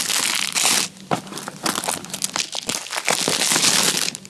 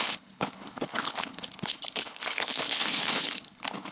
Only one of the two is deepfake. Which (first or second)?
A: second